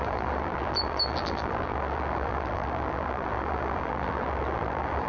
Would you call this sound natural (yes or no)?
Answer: no